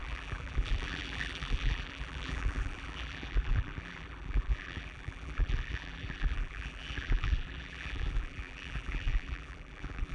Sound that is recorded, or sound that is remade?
remade